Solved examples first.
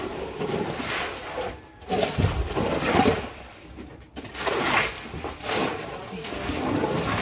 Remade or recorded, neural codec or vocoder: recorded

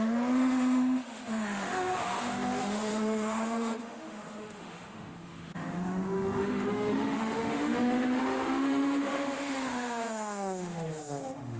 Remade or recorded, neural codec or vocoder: remade, autoencoder, DAC-VAE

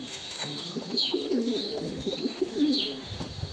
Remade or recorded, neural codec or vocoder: remade, autoencoder, DAC-VAE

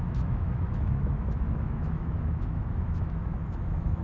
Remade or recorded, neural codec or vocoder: remade, autoencoder, DAC-VAE